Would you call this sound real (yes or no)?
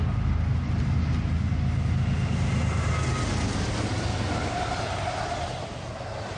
yes